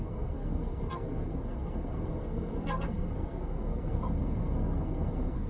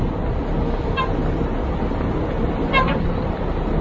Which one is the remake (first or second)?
first